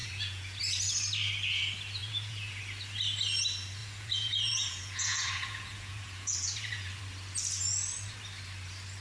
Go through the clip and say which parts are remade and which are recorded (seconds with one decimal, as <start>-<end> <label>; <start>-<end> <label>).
0.0-0.6 remade; 0.6-2.0 recorded; 2.0-2.6 remade; 2.6-3.8 recorded; 3.8-7.0 remade; 7.0-9.0 recorded